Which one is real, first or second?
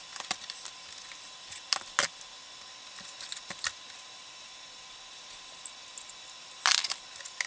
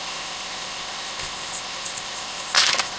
first